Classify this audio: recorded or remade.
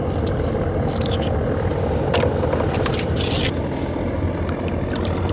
recorded